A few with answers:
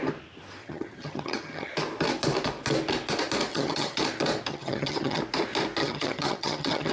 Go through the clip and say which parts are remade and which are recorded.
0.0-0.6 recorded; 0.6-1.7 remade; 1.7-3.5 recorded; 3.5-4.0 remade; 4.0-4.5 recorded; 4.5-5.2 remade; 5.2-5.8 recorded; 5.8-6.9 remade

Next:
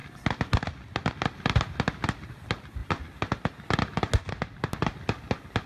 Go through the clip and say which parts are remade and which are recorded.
0.0-5.7 recorded

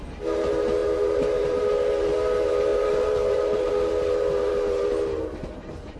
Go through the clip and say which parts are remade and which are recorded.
0.0-2.7 recorded; 2.7-3.7 remade; 3.7-6.0 recorded

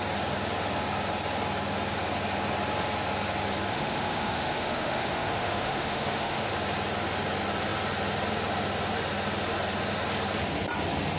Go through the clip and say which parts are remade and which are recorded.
0.0-3.7 recorded; 3.7-6.5 remade; 6.5-11.2 recorded

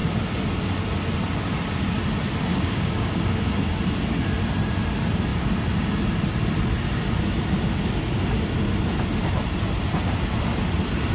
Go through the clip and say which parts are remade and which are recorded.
0.0-2.5 recorded; 2.5-3.8 remade; 3.8-11.1 recorded

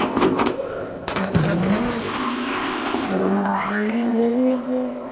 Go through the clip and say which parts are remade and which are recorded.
0.0-1.4 remade; 1.4-2.0 recorded; 2.0-5.1 remade